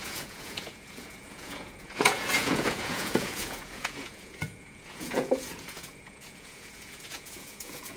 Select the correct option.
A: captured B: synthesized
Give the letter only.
B